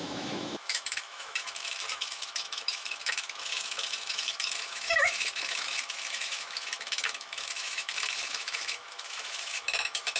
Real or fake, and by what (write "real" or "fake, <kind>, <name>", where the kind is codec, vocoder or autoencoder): fake, autoencoder, DAC-VAE